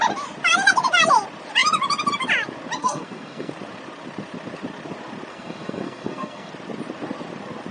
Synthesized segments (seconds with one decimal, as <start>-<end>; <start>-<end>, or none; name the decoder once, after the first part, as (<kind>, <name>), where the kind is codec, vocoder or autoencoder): 2.8-3.5 (codec, SNAC); 5.3-6.5